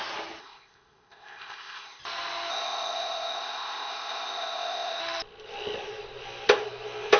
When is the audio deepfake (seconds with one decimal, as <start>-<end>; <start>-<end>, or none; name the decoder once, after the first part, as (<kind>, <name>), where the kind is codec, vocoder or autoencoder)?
0.4-2.0 (codec, ZipCodec); 2.5-5.0